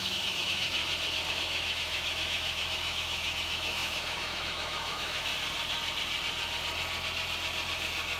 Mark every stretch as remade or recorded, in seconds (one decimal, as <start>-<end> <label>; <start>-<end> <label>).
0.0-0.8 remade; 0.8-1.3 recorded; 1.3-5.3 remade; 5.3-8.2 recorded